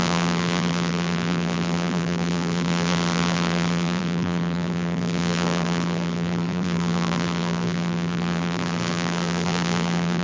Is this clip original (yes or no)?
no